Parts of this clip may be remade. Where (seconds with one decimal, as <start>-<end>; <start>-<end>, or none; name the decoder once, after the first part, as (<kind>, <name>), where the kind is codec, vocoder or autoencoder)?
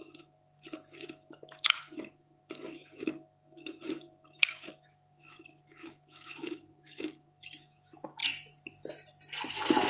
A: 0.0-8.2 (autoencoder, DAC-VAE); 9.5-9.9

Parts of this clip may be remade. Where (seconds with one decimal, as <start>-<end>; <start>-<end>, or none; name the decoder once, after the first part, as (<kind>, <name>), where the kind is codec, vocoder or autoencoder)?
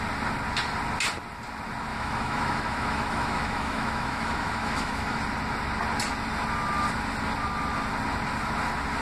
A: 1.9-5.2 (autoencoder, DAC-VAE)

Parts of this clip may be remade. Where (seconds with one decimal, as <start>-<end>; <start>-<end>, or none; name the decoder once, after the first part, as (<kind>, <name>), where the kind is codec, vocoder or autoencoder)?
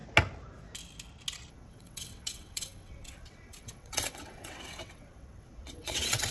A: 1.5-6.3 (vocoder, WaveNeXt)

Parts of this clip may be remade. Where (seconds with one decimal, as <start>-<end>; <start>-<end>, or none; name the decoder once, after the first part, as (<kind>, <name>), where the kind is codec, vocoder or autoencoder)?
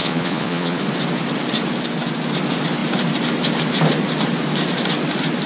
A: 0.0-0.8 (vocoder, Vocos)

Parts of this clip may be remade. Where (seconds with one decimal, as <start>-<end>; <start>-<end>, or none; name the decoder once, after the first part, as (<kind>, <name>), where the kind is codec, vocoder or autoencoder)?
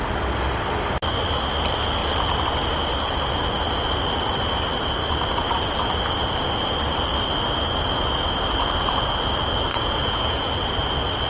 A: 9.7-10.5 (vocoder, Vocos)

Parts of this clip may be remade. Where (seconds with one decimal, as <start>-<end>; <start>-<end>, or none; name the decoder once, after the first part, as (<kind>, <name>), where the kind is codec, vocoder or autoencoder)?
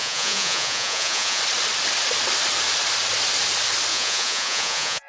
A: 0.0-1.4 (vocoder, Vocos); 3.9-5.1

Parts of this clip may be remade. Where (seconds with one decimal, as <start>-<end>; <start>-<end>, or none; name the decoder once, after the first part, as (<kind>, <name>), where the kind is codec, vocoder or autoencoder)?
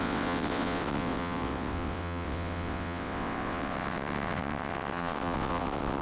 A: 0.0-6.0 (vocoder, WaveNeXt)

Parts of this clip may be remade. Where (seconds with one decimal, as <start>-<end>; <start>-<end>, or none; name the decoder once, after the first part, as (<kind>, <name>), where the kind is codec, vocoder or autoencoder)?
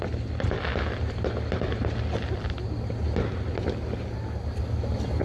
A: none